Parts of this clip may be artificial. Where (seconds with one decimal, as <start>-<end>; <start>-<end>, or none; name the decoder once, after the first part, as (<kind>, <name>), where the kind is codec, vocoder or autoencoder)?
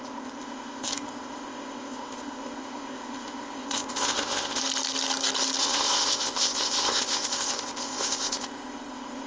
0.0-4.6 (codec, ZipCodec); 5.6-9.3